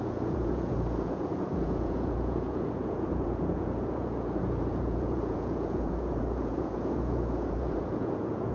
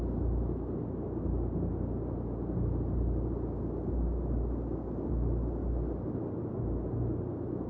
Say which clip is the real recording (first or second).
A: second